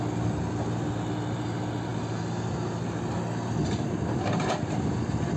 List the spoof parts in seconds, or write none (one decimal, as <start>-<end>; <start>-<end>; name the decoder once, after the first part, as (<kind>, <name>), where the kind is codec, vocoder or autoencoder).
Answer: none